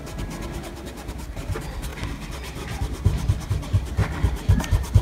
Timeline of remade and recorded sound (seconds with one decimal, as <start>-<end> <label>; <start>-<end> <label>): 0.0-1.9 recorded; 1.9-2.8 remade; 2.8-4.0 recorded; 4.0-5.0 remade